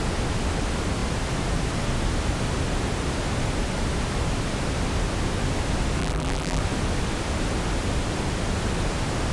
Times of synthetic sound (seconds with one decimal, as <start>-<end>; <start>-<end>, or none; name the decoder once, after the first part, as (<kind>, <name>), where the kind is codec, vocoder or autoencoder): 6.0-6.6 (vocoder, BigVGAN v2)